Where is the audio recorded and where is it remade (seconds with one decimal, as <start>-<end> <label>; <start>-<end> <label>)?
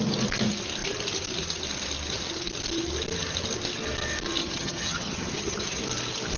0.0-4.4 recorded; 4.4-5.8 remade; 5.8-6.4 recorded